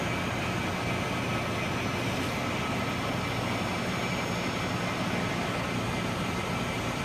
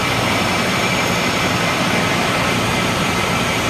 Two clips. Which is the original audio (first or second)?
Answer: first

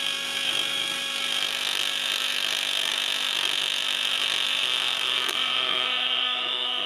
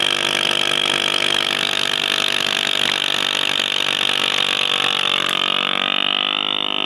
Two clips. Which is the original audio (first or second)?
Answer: second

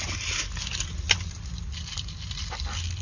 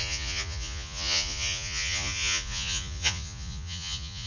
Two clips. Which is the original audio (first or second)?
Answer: first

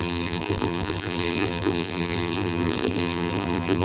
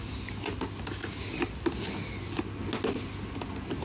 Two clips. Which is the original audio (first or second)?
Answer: second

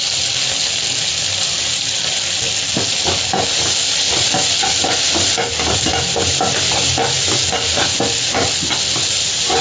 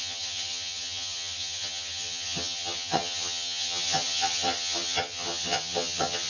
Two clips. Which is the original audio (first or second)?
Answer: first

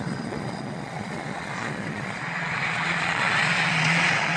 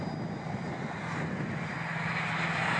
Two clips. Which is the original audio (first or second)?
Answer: second